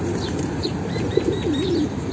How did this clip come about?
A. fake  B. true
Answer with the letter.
A